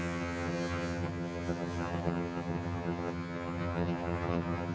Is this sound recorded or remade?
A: remade